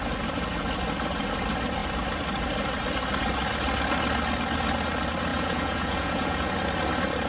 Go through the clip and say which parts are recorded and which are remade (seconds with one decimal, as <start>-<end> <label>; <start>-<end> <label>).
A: 0.0-5.3 recorded; 5.3-6.5 remade; 6.5-7.3 recorded